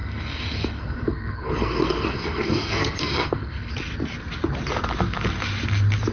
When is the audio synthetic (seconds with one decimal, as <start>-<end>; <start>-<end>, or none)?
0.0-3.7